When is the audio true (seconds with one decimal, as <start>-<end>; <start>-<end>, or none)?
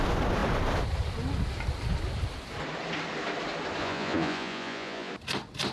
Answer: 0.0-3.8; 5.1-5.7